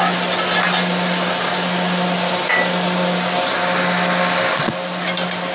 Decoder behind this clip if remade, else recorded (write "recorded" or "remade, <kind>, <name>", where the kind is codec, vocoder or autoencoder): recorded